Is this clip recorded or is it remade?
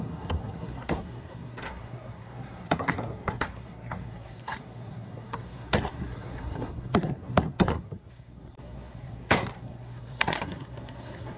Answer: remade